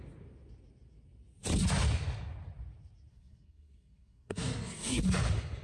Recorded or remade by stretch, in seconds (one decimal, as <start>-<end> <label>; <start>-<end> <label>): 0.0-3.1 recorded; 3.1-5.0 remade; 5.0-5.6 recorded

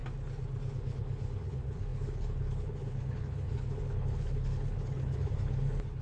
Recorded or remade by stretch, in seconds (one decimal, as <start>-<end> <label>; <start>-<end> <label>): 0.0-0.7 recorded; 0.7-6.0 remade